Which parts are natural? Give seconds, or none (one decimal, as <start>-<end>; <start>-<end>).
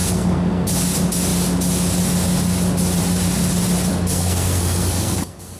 0.7-3.9